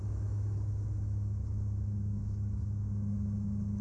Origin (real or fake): fake